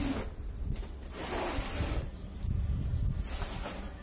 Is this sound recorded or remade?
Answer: recorded